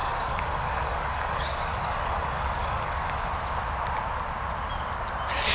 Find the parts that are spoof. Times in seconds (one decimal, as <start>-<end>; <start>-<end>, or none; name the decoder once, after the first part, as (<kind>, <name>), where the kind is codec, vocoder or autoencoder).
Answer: 0.0-3.3 (codec, DAC)